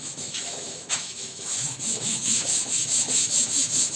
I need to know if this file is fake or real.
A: fake